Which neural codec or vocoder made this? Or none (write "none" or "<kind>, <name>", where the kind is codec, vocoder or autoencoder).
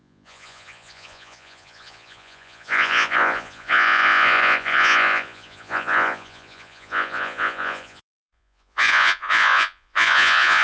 vocoder, Vocos